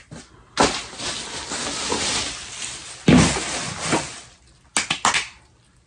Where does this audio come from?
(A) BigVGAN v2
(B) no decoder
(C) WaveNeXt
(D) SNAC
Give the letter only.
B